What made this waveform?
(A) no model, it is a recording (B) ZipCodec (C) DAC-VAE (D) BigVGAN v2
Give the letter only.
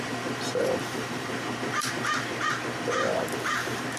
D